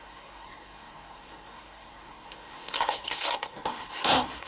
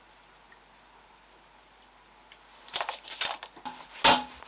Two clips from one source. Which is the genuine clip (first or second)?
second